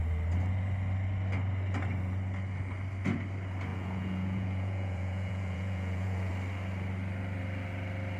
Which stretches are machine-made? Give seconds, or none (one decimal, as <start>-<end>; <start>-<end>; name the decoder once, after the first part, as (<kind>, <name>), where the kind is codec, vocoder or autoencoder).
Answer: 3.7-6.3 (vocoder, Vocos)